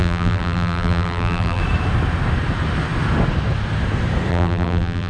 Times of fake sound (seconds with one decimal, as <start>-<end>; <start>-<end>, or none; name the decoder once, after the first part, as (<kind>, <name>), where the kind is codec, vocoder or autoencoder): 0.0-1.6 (vocoder, BigVGAN v2); 4.3-5.1